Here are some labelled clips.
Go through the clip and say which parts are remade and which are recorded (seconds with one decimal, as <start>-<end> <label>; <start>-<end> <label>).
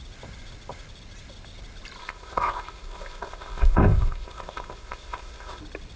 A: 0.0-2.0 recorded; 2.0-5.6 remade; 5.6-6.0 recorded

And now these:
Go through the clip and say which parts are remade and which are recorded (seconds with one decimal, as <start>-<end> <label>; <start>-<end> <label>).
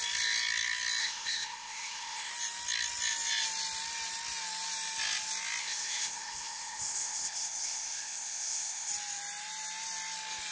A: 0.0-1.0 recorded; 1.0-2.3 remade; 2.3-5.6 recorded; 5.6-8.9 remade; 8.9-10.5 recorded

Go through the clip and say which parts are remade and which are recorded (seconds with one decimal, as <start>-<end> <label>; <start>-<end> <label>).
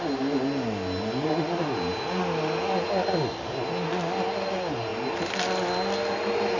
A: 0.0-6.6 recorded